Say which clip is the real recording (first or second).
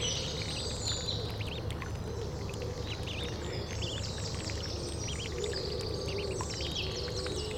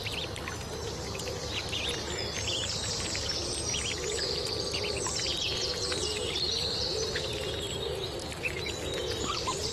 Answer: first